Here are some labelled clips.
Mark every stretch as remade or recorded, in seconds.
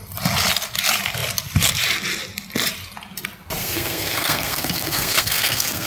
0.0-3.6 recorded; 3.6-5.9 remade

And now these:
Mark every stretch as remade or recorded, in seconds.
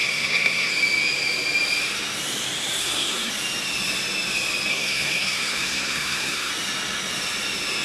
0.0-0.7 remade; 0.7-2.8 recorded; 2.8-3.3 remade; 3.3-4.7 recorded; 4.7-6.5 remade; 6.5-7.8 recorded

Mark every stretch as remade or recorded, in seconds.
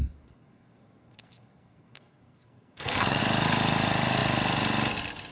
0.0-3.2 remade; 3.2-5.3 recorded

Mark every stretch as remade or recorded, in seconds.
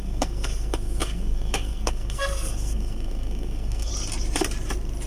0.0-3.9 remade; 3.9-5.1 recorded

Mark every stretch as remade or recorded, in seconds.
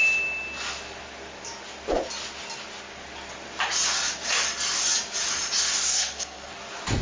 0.0-5.9 recorded; 5.9-6.5 remade; 6.5-7.0 recorded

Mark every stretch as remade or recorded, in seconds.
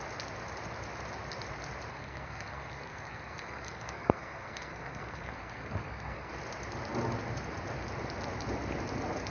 0.0-1.9 recorded; 1.9-6.3 remade; 6.3-9.3 recorded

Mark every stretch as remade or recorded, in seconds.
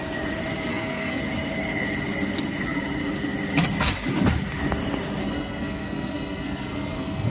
0.0-0.7 recorded; 0.7-1.2 remade; 1.2-5.2 recorded; 5.2-7.3 remade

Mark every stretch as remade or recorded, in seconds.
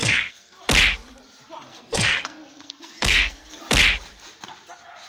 0.0-0.6 remade; 0.6-1.7 recorded; 1.7-3.6 remade; 3.6-5.1 recorded